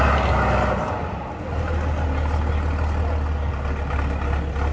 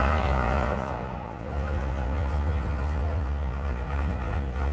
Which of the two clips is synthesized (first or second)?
second